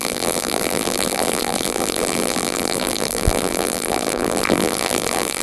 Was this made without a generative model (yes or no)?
no